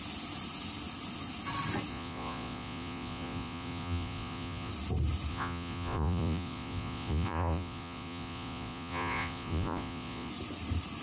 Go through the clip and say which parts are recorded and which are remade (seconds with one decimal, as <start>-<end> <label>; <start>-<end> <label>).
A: 0.0-1.9 recorded; 1.9-4.7 remade; 4.7-5.3 recorded; 5.3-10.3 remade; 10.3-11.0 recorded